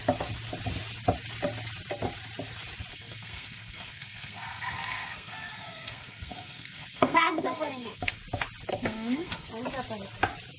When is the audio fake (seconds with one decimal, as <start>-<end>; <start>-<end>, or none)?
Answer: 2.9-8.2; 8.7-9.5